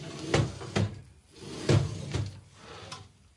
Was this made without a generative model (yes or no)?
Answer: yes